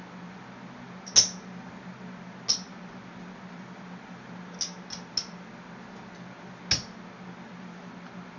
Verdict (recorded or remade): recorded